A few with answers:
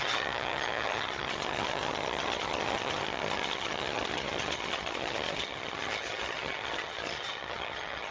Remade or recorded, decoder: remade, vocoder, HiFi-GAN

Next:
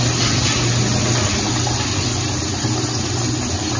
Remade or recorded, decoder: recorded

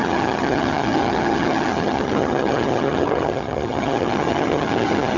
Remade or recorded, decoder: remade, vocoder, HiFi-GAN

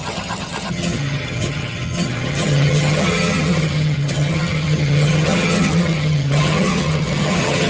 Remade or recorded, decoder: remade, vocoder, HiFi-GAN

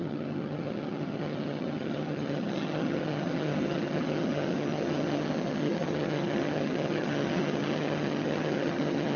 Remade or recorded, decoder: remade, vocoder, HiFi-GAN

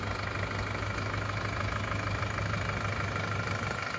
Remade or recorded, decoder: recorded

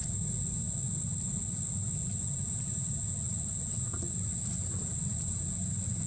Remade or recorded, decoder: recorded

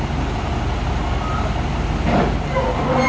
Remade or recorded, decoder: recorded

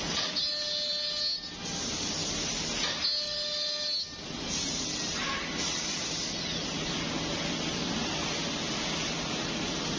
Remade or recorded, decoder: recorded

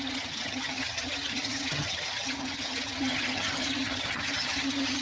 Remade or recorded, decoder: remade, vocoder, HiFi-GAN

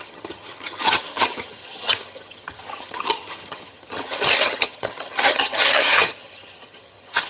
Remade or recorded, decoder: remade, vocoder, HiFi-GAN